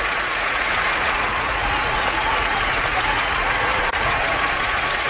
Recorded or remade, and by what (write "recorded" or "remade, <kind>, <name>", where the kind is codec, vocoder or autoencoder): remade, vocoder, Vocos